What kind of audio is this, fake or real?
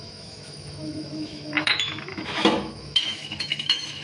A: fake